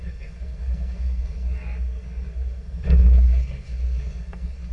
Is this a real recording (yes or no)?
no